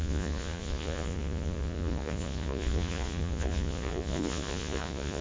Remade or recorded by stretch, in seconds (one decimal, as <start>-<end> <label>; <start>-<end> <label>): 0.0-5.2 remade